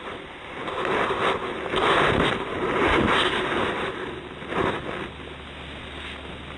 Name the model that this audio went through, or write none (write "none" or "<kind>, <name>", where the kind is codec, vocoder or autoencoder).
none